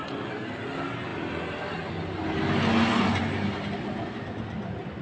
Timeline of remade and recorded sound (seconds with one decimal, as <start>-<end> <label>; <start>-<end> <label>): 0.0-5.0 recorded